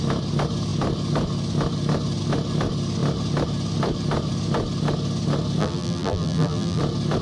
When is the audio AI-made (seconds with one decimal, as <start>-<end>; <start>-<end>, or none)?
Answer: 5.6-6.8

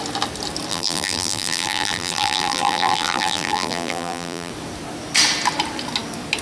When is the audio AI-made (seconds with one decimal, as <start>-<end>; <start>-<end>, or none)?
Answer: 0.7-4.5

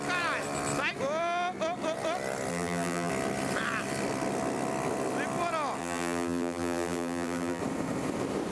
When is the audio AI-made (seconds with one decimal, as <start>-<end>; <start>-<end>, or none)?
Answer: 2.5-3.1; 5.8-7.6

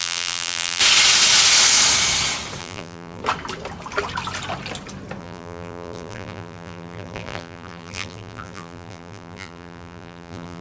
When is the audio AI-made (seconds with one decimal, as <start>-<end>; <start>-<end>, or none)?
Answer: 0.0-0.8; 2.6-3.2; 5.2-10.6

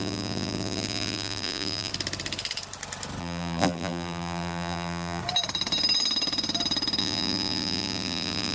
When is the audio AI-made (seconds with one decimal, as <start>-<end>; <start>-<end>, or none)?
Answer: 0.0-1.9; 3.2-5.2; 7.0-8.5

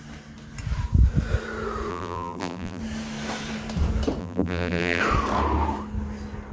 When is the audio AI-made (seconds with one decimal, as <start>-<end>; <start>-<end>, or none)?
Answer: 1.9-2.8; 4.2-5.0

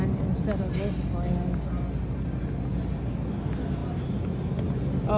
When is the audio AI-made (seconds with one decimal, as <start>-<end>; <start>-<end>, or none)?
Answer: none